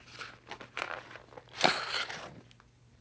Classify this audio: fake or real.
real